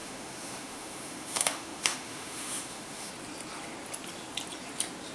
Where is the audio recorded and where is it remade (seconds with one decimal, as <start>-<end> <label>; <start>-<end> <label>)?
0.0-3.1 remade; 3.1-5.1 recorded